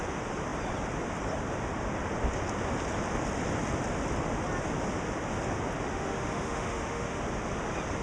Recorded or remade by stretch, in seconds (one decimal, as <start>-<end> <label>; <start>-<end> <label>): 0.0-5.9 recorded; 5.9-7.2 remade; 7.2-8.0 recorded